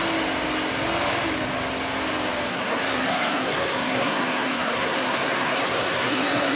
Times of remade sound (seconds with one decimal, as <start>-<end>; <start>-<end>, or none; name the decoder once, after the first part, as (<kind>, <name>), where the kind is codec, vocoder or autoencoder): 2.5-6.6 (codec, SNAC)